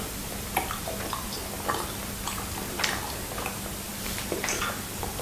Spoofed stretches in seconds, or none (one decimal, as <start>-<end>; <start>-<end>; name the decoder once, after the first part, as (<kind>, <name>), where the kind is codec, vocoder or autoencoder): 3.9-4.6 (vocoder, BigVGAN v2)

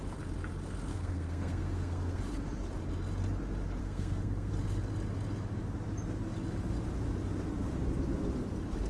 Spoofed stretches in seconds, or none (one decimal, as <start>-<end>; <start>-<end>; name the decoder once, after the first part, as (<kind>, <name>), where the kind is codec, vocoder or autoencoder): 0.9-2.2 (codec, SNAC); 3.8-4.5

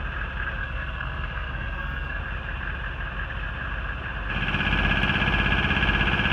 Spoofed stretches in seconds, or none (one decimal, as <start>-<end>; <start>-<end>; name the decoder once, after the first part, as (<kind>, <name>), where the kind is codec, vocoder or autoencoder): 0.6-2.2 (codec, SNAC)